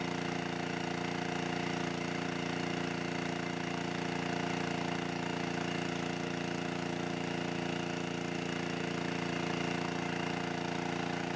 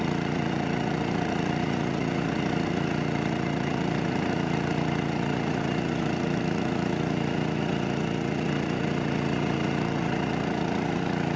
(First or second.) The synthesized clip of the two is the second